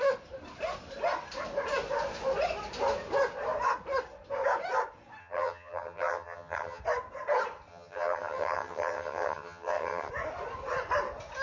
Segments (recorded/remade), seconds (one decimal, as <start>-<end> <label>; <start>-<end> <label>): 0.0-5.2 recorded; 5.2-6.8 remade; 6.8-7.7 recorded; 7.7-10.1 remade; 10.1-11.4 recorded